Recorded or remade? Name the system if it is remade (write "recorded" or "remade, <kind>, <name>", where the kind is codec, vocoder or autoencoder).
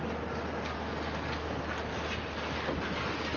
recorded